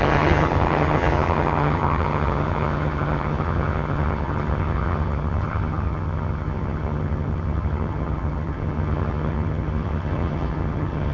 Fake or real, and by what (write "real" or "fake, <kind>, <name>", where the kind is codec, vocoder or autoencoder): fake, vocoder, HiFi-GAN